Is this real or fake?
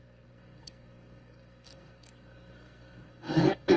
fake